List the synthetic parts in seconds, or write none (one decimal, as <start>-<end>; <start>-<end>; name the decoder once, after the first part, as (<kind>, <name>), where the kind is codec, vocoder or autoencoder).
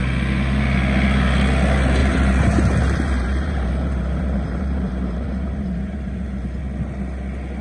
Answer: 2.0-6.6 (vocoder, BigVGAN v2)